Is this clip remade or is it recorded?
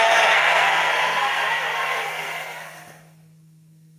remade